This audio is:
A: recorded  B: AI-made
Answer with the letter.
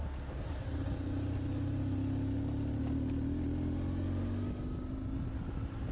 A